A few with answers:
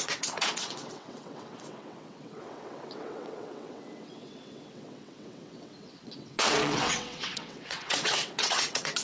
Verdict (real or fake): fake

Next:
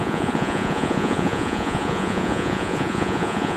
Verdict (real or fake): fake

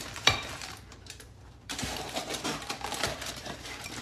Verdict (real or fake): fake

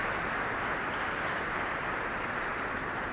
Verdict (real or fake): real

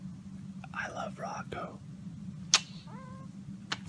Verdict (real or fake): real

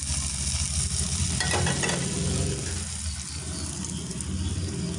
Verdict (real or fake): real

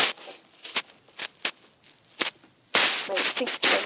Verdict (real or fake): real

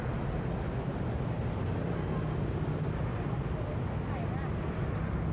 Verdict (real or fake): real